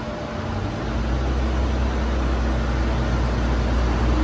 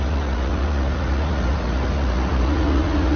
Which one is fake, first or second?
second